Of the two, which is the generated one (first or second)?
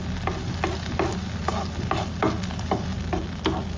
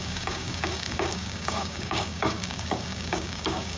second